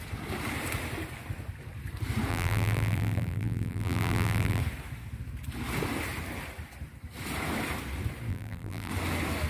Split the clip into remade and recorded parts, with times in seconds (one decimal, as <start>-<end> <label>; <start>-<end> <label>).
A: 0.0-2.3 recorded; 2.3-4.6 remade; 4.6-8.3 recorded; 8.3-8.9 remade; 8.9-9.5 recorded